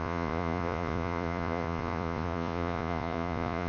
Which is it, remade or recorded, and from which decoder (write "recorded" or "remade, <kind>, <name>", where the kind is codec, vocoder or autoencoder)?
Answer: remade, vocoder, Vocos